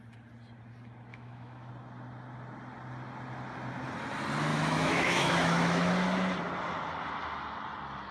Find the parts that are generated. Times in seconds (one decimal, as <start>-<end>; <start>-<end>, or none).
1.1-1.7; 4.5-5.9